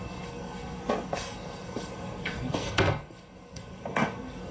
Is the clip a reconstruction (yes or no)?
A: yes